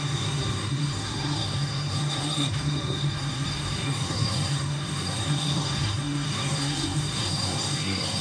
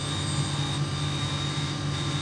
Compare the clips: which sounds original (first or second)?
second